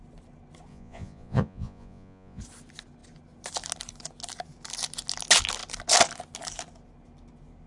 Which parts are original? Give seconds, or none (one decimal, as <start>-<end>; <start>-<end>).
0.0-0.7; 2.4-7.7